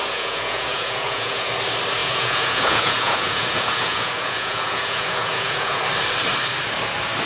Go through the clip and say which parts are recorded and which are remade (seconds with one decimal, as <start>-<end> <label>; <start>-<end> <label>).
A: 0.0-1.5 remade; 1.5-2.0 recorded; 2.0-5.8 remade; 5.8-7.3 recorded